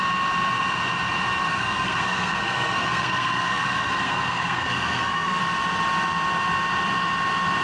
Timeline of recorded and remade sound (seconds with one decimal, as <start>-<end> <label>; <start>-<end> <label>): 0.0-1.5 recorded; 1.5-5.4 remade; 5.4-7.6 recorded